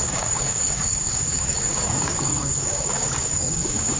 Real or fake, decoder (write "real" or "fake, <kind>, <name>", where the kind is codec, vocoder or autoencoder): fake, codec, DAC